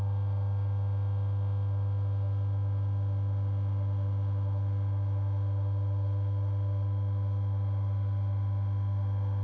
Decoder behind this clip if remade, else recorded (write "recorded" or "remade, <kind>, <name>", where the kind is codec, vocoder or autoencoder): remade, autoencoder, DAC-VAE